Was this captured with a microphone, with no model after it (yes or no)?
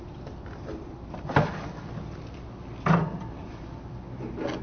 yes